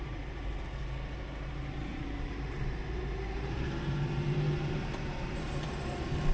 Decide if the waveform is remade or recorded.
remade